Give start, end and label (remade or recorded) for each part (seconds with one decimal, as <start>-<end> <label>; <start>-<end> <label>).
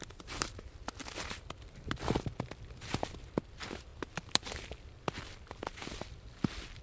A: 0.0-3.9 remade; 3.9-5.0 recorded; 5.0-6.8 remade